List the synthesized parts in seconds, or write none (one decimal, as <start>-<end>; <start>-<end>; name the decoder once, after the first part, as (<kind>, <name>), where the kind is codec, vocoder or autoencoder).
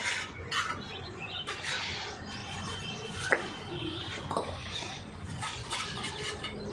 0.0-1.5 (vocoder, Vocos); 2.4-6.1